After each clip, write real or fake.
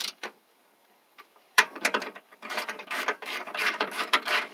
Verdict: fake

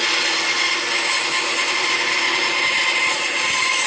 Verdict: real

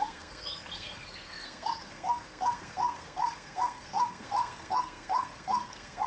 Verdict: fake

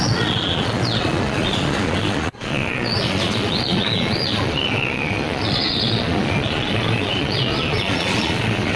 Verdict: fake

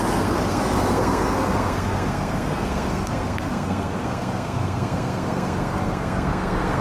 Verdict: fake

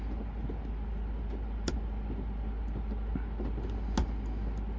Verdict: real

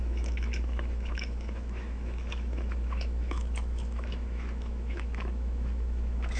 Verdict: fake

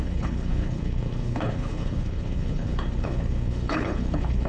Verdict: fake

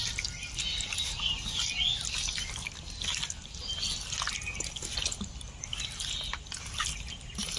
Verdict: real